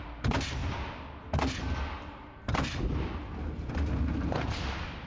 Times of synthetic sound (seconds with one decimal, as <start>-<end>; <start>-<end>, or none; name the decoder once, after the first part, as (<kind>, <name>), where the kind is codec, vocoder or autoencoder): none